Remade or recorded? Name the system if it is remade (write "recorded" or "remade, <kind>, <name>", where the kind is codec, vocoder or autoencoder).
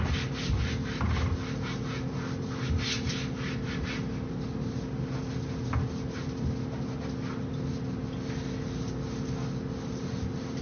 recorded